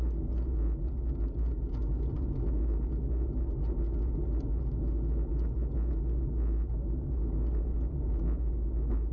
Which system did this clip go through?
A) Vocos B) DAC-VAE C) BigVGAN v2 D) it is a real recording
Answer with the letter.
D